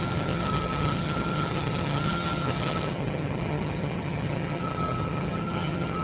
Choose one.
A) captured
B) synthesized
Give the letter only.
B